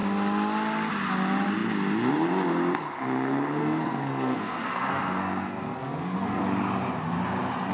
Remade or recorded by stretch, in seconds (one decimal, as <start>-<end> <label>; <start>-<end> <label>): 0.0-3.6 recorded; 3.6-6.4 remade; 6.4-7.7 recorded

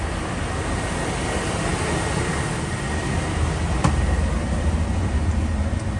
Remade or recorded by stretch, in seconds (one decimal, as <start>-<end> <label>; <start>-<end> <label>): 0.0-6.0 recorded